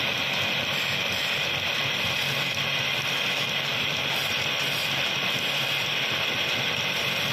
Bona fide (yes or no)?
yes